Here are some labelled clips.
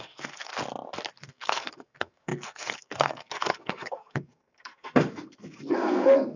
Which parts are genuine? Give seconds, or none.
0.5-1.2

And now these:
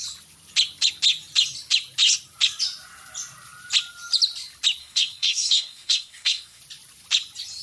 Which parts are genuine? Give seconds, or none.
0.0-4.8; 6.6-7.6

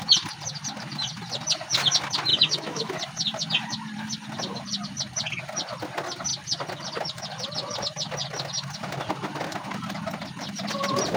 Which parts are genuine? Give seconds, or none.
0.0-2.3; 2.9-11.2

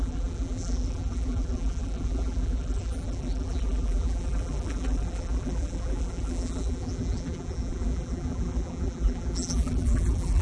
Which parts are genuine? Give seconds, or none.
none

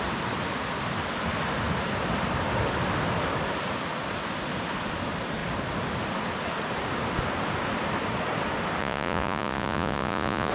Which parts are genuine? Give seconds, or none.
0.0-8.8

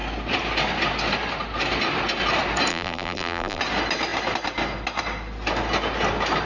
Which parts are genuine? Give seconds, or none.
0.0-2.7; 3.6-6.5

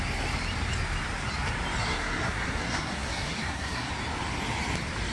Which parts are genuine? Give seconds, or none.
0.0-1.8; 3.9-5.1